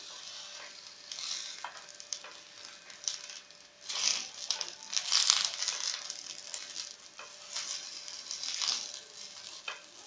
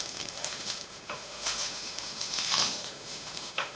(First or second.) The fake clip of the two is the second